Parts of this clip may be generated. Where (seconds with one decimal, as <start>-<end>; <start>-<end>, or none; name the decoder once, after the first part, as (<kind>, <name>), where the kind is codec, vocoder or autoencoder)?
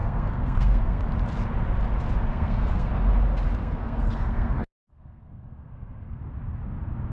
0.0-1.0 (codec, SNAC); 2.3-2.9; 3.6-6.2